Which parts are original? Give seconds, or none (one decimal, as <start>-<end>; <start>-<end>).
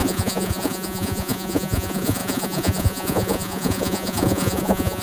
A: none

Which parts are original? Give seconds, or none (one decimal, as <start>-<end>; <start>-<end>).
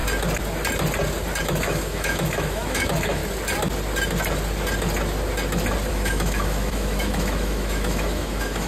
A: 0.0-1.4; 3.2-5.9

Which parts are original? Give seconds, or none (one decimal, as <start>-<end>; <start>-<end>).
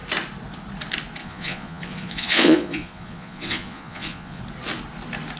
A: 0.0-1.2; 4.4-5.4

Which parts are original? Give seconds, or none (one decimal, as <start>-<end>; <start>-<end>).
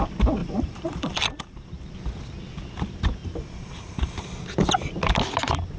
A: 0.0-0.4; 1.7-3.2; 4.2-5.8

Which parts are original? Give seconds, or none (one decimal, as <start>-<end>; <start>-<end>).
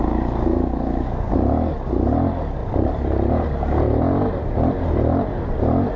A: 0.0-0.5; 1.3-6.0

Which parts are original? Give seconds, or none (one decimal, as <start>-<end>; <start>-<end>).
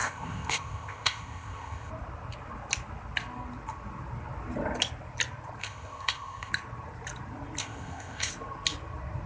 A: 1.9-5.6; 6.5-7.6; 8.3-9.3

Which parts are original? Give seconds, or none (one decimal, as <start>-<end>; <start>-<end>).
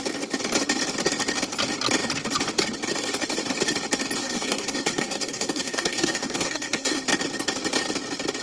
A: 0.0-4.2; 7.0-8.4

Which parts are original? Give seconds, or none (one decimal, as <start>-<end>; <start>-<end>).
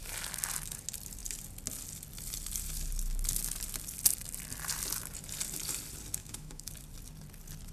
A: 0.0-6.2; 6.7-7.7